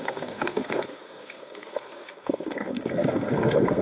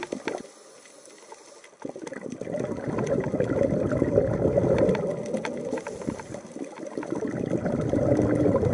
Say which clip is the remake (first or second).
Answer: first